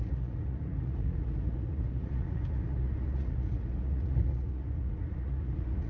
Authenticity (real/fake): fake